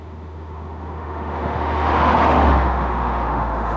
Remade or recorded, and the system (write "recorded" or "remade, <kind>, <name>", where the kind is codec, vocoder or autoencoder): remade, autoencoder, DAC-VAE